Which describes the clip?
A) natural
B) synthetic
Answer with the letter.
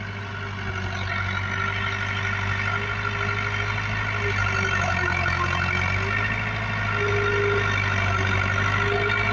A